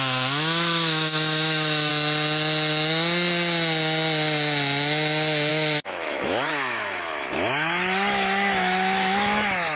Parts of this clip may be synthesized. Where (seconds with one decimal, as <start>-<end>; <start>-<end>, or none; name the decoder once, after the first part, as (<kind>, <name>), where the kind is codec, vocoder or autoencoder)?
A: 0.0-1.9 (autoencoder, DAC-VAE); 5.5-9.8